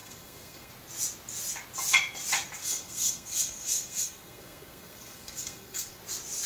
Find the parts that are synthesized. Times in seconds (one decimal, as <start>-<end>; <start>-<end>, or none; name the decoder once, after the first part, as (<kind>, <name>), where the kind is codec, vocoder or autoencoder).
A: 0.0-0.7 (codec, SNAC); 2.6-6.0